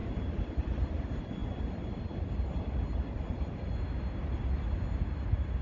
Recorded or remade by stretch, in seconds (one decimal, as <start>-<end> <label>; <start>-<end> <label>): 0.0-5.6 recorded